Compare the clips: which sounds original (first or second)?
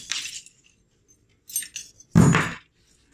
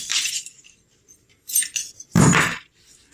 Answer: first